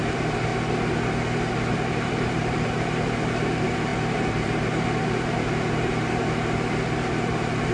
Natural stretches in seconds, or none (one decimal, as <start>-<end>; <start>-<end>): 0.5-1.7

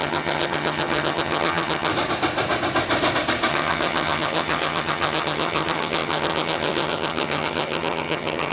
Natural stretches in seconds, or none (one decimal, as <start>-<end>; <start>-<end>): 1.9-3.5

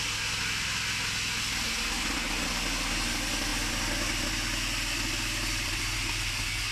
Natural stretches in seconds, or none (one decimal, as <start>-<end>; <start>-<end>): 0.0-6.7

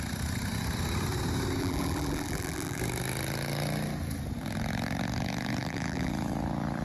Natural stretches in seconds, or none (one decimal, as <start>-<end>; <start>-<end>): 0.0-1.6; 2.8-5.6; 6.1-6.8

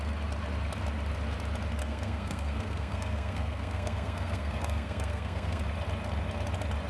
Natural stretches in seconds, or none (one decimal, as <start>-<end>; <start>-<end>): 0.0-1.8; 5.6-6.9